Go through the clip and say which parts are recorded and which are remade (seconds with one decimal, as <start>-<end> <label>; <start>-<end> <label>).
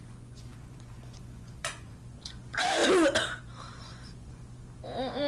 0.0-2.8 remade; 2.8-3.7 recorded; 3.7-5.3 remade